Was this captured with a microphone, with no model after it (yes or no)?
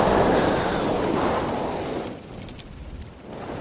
yes